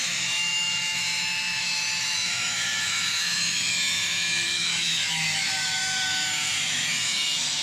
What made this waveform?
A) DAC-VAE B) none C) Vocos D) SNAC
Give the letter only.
A